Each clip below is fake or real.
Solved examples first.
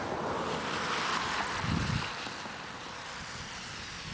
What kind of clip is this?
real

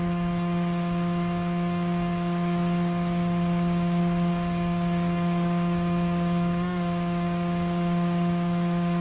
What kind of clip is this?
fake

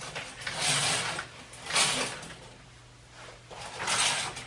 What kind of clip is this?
real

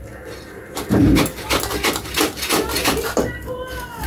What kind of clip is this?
real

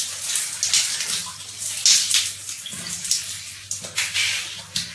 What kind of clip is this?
real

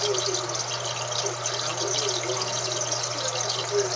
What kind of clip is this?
real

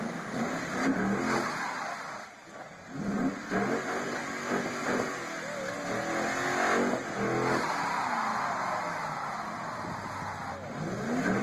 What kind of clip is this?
real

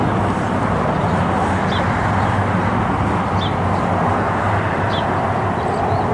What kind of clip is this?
real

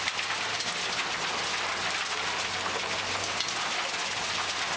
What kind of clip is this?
real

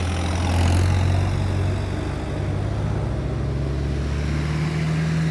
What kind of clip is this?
real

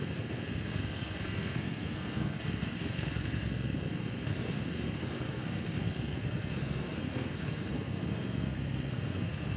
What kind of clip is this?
fake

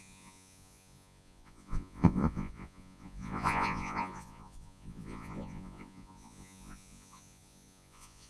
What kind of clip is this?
fake